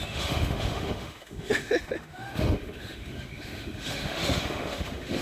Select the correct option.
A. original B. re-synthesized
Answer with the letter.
B